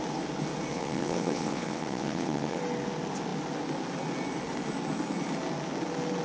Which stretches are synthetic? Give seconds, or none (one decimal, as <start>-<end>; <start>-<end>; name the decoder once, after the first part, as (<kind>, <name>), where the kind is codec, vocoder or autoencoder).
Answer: 0.7-2.6 (vocoder, WaveNeXt)